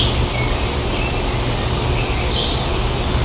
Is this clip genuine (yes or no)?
yes